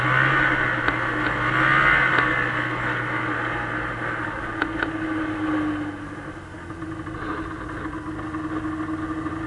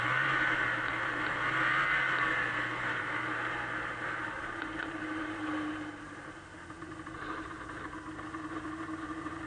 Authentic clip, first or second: first